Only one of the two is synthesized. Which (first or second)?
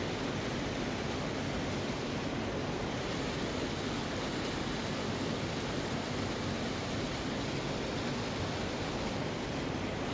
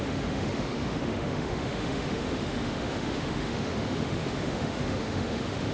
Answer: second